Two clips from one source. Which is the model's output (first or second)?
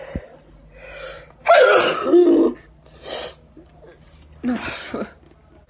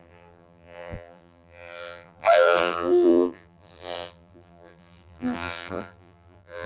second